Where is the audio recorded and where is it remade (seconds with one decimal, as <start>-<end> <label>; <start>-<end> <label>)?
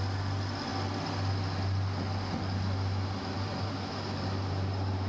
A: 0.0-5.1 recorded